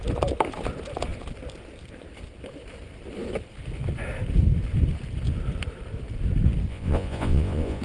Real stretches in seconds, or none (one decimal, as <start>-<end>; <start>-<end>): 0.0-6.7